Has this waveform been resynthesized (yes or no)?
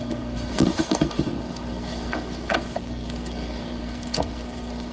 yes